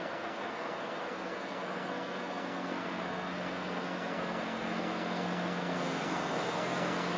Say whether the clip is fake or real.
fake